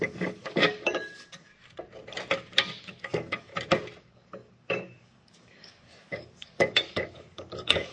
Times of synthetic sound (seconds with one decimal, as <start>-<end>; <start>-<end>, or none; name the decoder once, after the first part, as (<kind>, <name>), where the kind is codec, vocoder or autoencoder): 0.0-1.5 (codec, DAC); 2.8-3.5; 4.0-7.9